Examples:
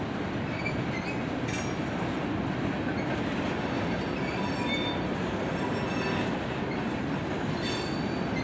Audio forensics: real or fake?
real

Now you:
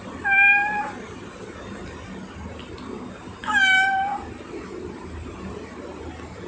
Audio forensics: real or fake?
real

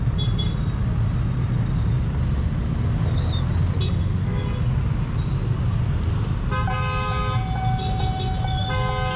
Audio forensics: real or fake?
real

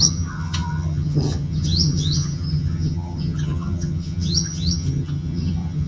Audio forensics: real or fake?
fake